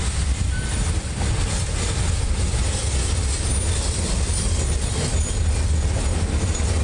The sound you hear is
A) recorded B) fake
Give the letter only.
A